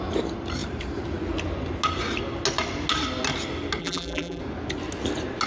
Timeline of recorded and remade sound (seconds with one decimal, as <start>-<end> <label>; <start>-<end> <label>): 0.0-3.8 recorded; 3.8-4.4 remade; 4.4-5.5 recorded